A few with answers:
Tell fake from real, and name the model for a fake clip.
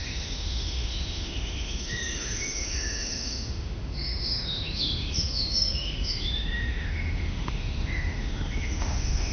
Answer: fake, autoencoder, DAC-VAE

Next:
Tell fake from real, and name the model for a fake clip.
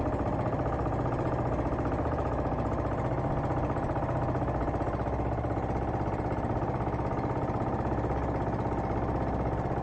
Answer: real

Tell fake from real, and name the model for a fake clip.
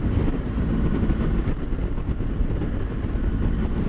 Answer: fake, vocoder, BigVGAN v2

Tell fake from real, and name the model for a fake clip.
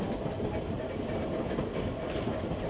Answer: real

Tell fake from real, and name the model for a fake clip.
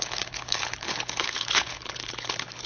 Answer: fake, codec, HILCodec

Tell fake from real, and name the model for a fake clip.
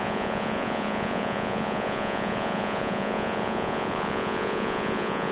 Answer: fake, vocoder, Vocos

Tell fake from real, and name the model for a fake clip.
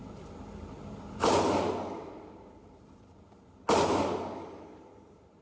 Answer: real